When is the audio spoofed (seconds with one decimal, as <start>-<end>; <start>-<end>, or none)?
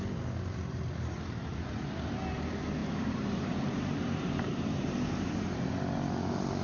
2.8-5.7